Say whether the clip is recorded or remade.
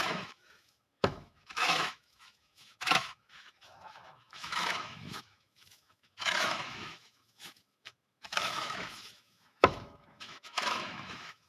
remade